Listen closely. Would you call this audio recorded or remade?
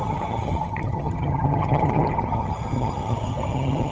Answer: remade